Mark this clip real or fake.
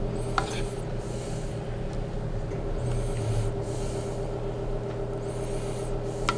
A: real